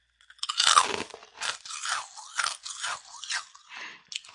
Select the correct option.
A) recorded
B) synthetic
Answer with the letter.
A